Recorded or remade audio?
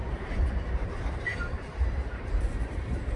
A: remade